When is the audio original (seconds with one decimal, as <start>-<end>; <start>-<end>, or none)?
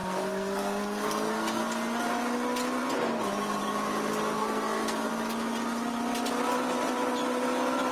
1.6-4.4; 5.1-7.9